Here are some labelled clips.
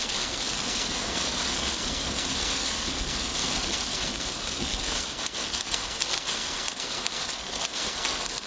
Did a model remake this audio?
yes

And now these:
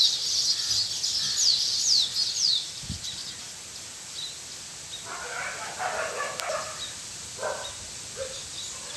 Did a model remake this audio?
no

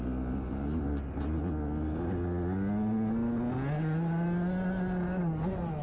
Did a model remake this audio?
no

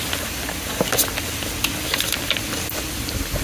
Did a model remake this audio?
no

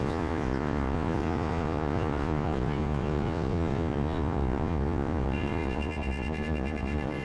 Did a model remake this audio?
yes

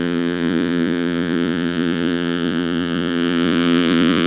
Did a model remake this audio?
yes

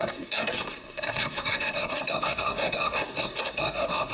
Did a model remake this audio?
yes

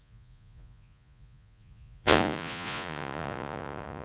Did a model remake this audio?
yes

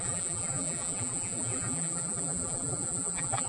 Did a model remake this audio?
yes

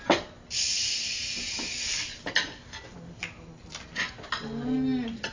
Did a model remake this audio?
no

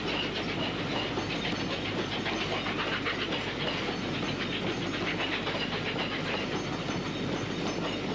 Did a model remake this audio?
no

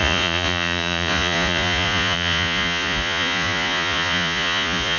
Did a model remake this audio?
yes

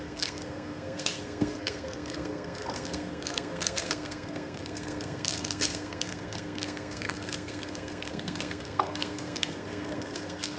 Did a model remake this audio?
yes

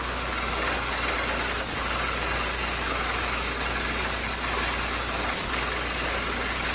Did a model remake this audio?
no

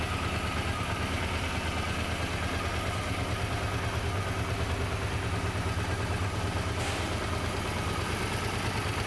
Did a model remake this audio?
no